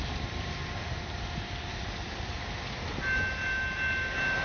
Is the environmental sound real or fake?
real